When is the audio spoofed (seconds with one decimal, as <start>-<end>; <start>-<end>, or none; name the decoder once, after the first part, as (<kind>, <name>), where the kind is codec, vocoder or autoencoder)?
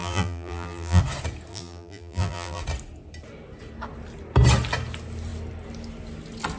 0.0-1.0 (vocoder, BigVGAN v2); 1.5-2.6